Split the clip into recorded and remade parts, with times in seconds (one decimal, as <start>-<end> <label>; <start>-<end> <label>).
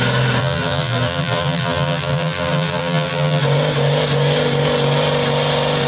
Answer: 0.0-0.4 recorded; 0.4-3.4 remade; 3.4-5.9 recorded